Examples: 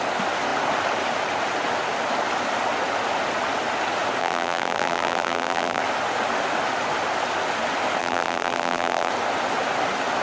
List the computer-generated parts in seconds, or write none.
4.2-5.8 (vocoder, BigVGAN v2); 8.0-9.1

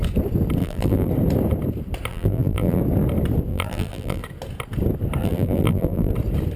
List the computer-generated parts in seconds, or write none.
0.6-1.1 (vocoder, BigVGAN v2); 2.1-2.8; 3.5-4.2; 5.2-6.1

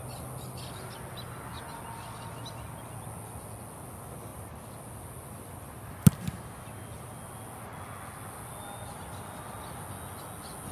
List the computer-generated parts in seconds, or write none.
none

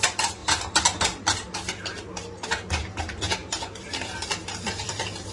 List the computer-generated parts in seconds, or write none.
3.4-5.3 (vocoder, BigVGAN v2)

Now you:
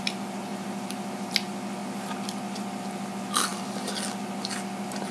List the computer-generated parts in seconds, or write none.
0.5-1.3 (vocoder, BigVGAN v2); 3.5-4.5

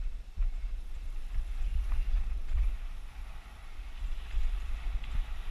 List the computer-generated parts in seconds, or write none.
3.6-4.8 (vocoder, BigVGAN v2)

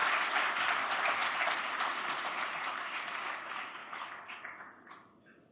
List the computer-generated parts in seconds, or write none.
0.6-3.8 (vocoder, BigVGAN v2); 4.3-5.5